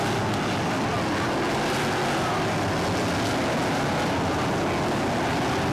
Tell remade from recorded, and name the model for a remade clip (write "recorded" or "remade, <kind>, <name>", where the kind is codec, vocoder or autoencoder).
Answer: recorded